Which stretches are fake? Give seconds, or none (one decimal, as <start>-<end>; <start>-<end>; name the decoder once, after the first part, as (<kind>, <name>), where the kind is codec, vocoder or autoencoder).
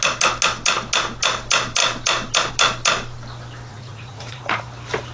3.7-4.6 (vocoder, Vocos)